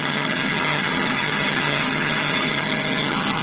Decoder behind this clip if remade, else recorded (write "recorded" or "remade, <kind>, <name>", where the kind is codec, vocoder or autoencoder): remade, vocoder, HiFi-GAN